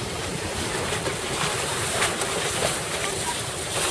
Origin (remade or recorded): remade